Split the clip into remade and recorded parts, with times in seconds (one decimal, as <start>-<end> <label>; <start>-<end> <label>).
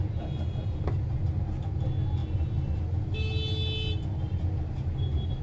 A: 0.0-5.4 recorded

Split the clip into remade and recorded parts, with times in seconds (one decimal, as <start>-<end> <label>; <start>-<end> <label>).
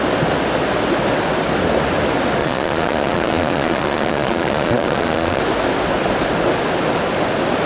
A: 0.0-2.4 recorded; 2.4-5.4 remade; 5.4-7.7 recorded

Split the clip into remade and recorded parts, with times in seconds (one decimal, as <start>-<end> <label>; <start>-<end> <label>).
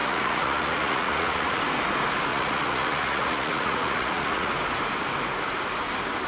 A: 0.0-1.6 remade; 1.6-2.3 recorded; 2.3-4.5 remade; 4.5-6.3 recorded